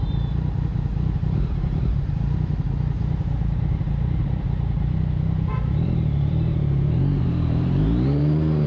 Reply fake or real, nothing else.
fake